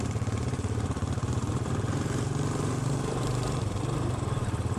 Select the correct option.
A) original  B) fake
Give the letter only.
B